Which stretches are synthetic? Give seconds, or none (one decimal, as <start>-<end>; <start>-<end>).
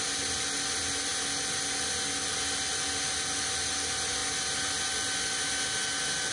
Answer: none